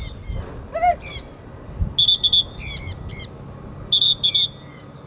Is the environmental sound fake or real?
real